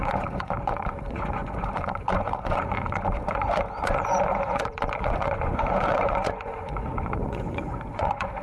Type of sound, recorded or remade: remade